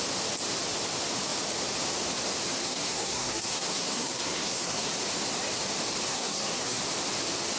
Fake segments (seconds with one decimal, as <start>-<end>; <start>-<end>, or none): 2.6-4.9; 6.1-6.8